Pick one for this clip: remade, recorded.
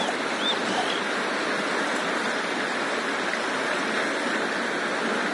recorded